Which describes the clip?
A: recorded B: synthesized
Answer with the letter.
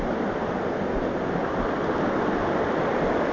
A